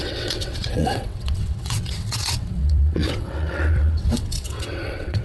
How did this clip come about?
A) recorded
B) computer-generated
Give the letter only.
B